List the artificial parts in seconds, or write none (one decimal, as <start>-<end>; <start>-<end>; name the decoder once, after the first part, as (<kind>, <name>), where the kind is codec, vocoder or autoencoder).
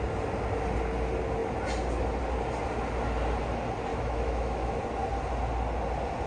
3.9-4.8 (autoencoder, DAC-VAE)